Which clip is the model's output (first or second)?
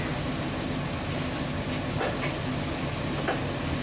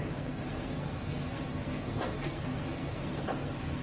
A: second